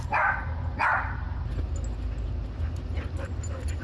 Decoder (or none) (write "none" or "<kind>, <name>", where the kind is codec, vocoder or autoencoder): none